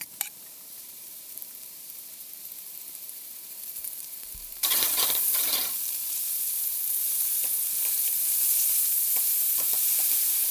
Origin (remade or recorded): remade